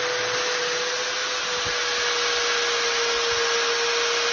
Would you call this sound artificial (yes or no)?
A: no